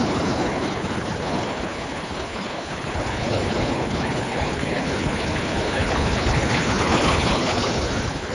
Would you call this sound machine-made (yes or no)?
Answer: yes